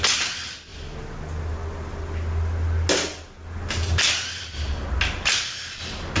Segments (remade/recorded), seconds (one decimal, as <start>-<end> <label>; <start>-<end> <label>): 0.0-6.2 recorded